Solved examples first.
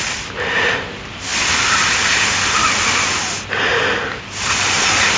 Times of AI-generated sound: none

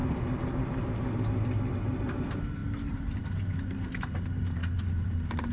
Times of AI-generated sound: 0.0-5.5 (vocoder, BigVGAN v2)

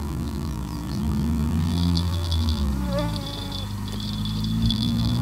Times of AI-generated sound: 0.0-2.7 (vocoder, BigVGAN v2); 4.7-5.2

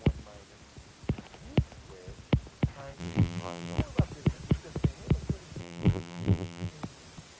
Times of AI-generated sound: 3.0-3.8 (vocoder, BigVGAN v2); 5.6-6.7

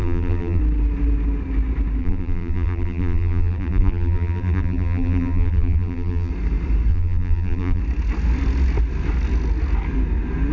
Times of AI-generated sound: 0.0-0.6 (vocoder, BigVGAN v2); 2.0-6.3; 6.9-7.8

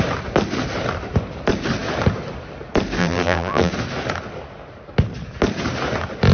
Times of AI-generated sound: 3.0-3.7 (vocoder, BigVGAN v2)

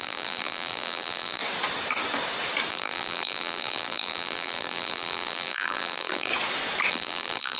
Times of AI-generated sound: 0.0-1.4 (vocoder, BigVGAN v2); 2.7-6.3; 6.9-7.6

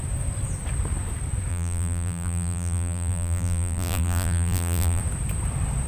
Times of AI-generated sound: 1.5-5.0 (vocoder, BigVGAN v2)